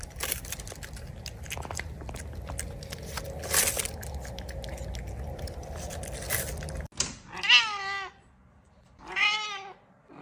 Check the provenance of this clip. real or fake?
real